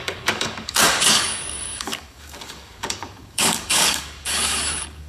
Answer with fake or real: fake